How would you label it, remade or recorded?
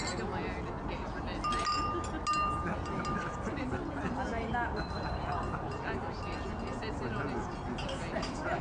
recorded